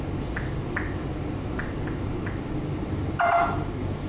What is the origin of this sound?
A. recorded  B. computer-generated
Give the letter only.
A